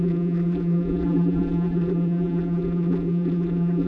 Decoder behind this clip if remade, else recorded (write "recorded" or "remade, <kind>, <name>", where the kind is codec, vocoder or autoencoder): remade, vocoder, BigVGAN v2